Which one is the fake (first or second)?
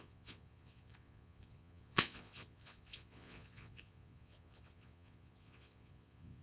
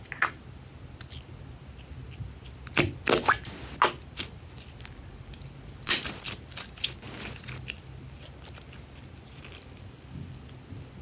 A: first